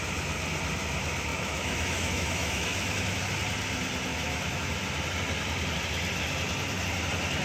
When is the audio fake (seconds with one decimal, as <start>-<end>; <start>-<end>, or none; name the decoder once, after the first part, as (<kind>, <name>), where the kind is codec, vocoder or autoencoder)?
1.3-3.2 (autoencoder, DAC-VAE); 4.1-4.7